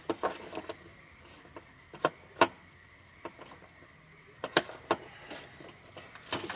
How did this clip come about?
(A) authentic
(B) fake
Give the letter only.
A